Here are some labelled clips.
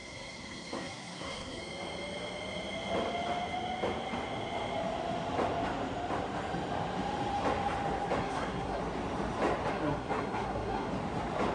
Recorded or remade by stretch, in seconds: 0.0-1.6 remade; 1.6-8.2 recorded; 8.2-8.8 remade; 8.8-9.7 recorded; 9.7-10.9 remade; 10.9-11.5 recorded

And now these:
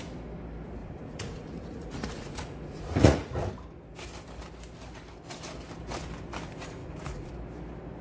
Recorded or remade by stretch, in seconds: 0.0-0.8 recorded; 0.8-3.5 remade; 3.5-6.8 recorded; 6.8-7.3 remade; 7.3-8.0 recorded

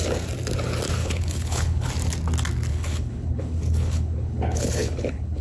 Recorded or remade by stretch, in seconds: 0.0-1.0 recorded; 1.0-1.9 remade; 1.9-2.7 recorded; 2.7-5.4 remade